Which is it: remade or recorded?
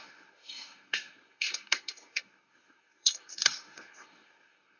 remade